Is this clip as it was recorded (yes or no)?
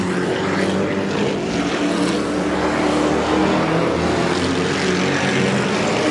yes